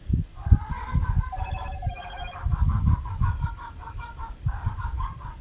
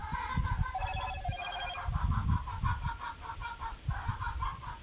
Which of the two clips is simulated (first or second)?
first